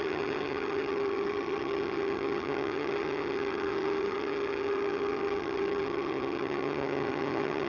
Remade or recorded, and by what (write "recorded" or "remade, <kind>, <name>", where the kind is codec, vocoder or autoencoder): remade, vocoder, HiFi-GAN